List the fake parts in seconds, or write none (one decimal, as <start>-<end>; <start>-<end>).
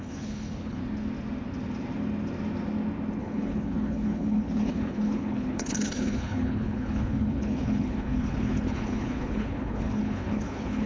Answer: 0.0-0.8; 3.2-10.9